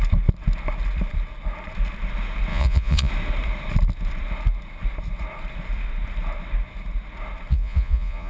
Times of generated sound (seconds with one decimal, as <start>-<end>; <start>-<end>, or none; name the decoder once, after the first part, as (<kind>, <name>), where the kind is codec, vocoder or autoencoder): 2.5-3.1 (vocoder, Vocos); 7.5-8.3